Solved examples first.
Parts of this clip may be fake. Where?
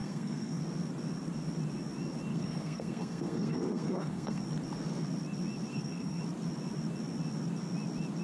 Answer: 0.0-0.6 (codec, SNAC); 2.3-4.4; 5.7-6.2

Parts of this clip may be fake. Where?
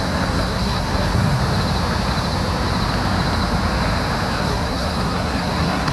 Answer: 0.0-1.4 (codec, SNAC); 4.4-5.9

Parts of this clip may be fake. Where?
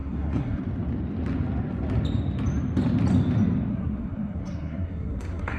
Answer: 0.0-0.6 (codec, SNAC); 3.7-5.6